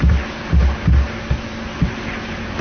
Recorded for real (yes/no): yes